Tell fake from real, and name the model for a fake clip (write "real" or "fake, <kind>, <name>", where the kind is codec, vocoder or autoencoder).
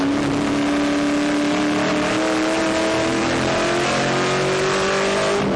real